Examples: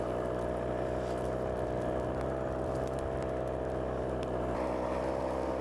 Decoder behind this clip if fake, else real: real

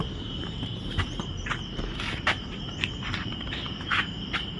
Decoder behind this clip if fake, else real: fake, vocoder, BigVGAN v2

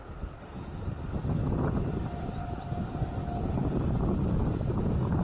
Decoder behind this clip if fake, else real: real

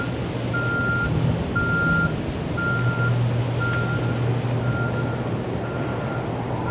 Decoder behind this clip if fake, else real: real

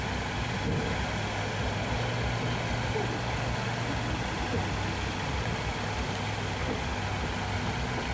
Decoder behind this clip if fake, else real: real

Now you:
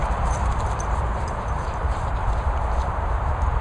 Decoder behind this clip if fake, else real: fake, vocoder, BigVGAN v2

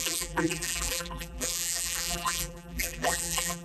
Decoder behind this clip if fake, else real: fake, vocoder, BigVGAN v2